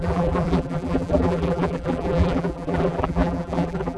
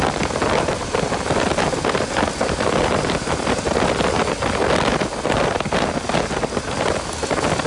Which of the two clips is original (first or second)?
second